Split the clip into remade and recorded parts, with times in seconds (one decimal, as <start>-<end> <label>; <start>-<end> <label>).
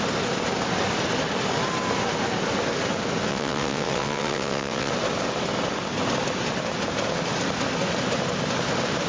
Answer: 0.0-3.3 recorded; 3.3-4.9 remade; 4.9-9.1 recorded